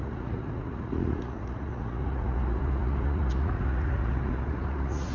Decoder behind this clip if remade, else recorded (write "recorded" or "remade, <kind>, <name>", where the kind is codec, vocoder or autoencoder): remade, vocoder, Vocos